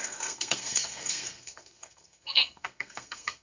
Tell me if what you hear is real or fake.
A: fake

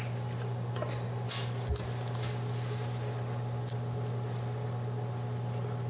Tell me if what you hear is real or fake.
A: real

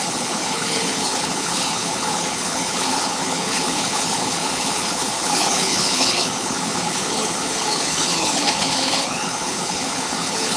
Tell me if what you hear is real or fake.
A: fake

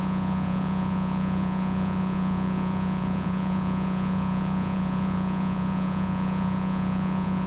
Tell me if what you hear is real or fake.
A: fake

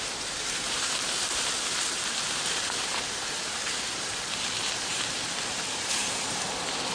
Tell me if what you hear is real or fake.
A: fake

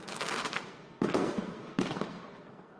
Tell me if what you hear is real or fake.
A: fake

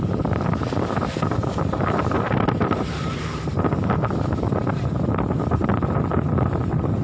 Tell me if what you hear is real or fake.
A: fake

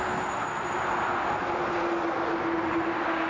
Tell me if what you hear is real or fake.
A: real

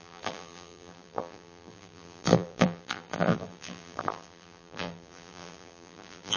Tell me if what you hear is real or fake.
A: fake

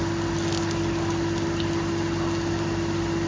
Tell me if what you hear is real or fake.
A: real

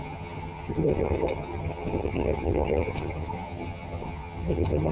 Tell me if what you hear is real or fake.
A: fake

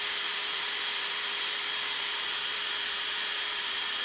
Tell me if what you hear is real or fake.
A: fake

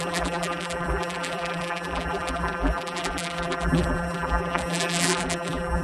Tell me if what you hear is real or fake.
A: fake